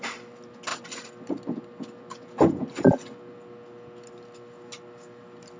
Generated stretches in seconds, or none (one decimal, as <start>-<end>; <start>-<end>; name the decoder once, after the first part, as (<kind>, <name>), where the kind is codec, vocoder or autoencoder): none